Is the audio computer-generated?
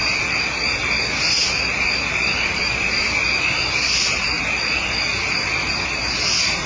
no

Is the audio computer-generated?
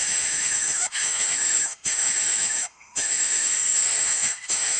yes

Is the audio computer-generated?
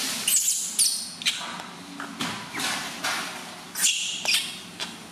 no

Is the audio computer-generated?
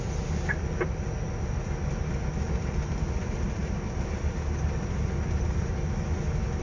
no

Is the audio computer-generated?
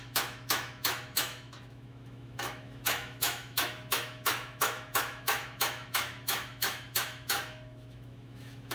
yes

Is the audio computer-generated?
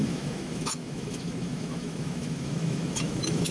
yes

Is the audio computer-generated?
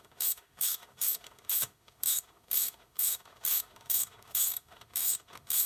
yes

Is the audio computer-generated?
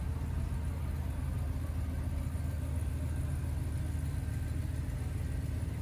no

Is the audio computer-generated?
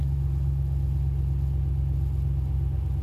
no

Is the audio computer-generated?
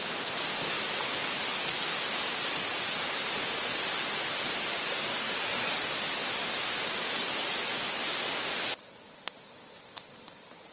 no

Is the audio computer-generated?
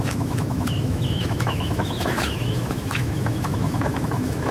yes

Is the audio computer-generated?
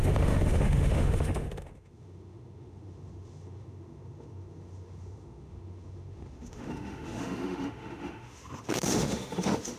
yes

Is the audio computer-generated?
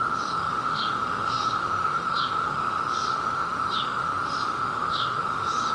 yes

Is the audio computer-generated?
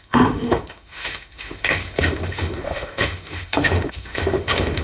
yes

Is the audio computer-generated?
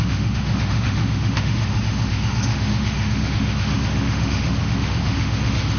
yes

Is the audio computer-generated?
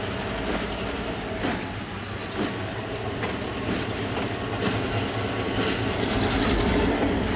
no